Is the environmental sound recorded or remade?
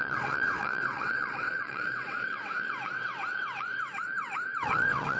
remade